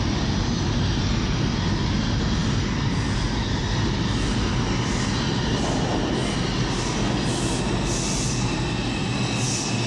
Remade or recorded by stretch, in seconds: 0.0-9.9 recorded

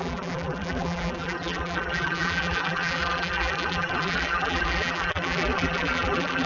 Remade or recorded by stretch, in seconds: 0.0-6.5 remade

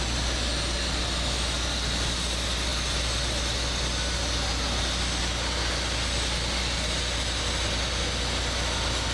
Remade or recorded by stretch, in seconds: 0.0-9.1 recorded